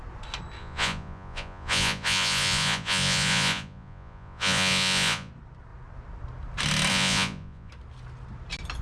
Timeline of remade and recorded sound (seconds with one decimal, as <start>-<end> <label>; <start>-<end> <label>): 0.0-0.6 recorded; 0.6-5.3 remade; 5.3-6.9 recorded; 6.9-7.7 remade; 7.7-8.8 recorded